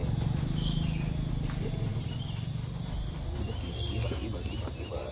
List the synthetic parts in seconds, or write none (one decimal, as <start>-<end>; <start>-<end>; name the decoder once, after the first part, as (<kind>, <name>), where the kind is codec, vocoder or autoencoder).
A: none